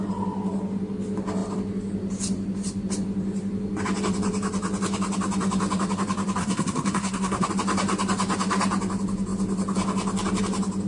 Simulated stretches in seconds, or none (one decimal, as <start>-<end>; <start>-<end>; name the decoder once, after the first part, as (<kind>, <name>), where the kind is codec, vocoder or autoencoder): 6.4-7.5 (codec, SNAC)